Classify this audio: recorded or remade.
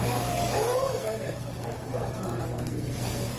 remade